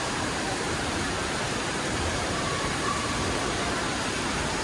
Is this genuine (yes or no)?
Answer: no